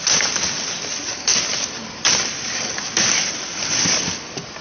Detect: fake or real real